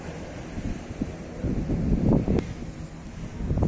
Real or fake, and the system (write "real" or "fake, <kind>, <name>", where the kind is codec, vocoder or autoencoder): real